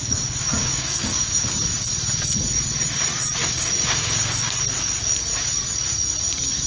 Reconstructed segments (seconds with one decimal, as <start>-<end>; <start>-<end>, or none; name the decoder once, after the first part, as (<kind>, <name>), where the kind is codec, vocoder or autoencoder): 0.0-1.5 (codec, DAC); 3.4-4.5